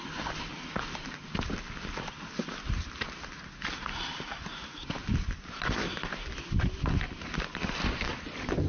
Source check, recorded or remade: recorded